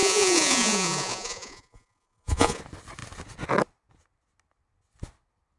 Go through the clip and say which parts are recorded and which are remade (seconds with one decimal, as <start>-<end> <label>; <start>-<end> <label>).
0.0-2.6 remade; 2.6-5.6 recorded